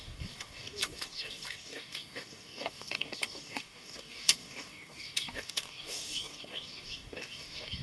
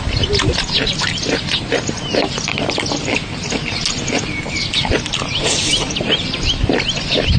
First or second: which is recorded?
second